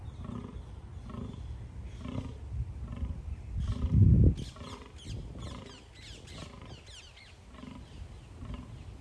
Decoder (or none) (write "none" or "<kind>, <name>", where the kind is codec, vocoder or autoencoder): none